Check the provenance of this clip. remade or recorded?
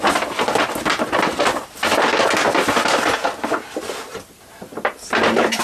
recorded